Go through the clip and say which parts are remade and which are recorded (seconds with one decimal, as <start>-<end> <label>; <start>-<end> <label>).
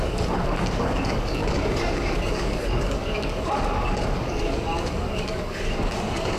0.0-6.4 remade